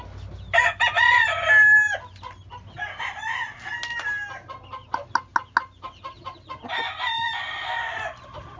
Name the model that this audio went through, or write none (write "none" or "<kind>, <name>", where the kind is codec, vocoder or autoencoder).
none